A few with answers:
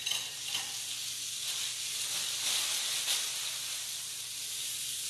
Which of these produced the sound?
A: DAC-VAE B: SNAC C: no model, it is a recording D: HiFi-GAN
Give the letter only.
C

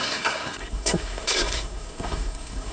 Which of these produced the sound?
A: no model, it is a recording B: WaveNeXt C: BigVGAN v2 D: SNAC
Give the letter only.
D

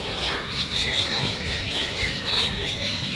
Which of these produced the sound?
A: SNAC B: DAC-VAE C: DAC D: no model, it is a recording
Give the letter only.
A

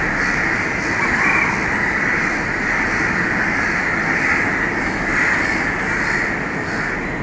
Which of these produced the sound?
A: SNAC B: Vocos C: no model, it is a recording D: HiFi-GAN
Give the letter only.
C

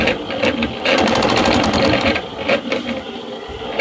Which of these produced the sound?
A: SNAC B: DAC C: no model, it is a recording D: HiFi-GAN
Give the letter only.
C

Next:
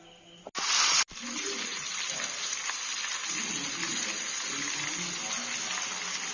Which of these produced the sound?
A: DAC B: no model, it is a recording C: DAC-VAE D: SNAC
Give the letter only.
B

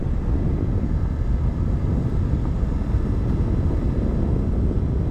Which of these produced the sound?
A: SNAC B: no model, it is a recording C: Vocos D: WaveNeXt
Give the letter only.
B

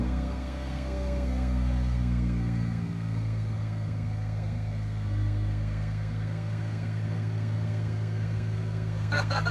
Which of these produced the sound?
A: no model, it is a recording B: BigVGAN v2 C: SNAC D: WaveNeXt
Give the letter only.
C